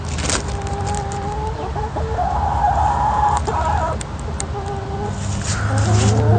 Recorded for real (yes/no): yes